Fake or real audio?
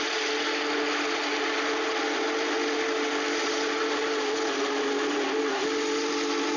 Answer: real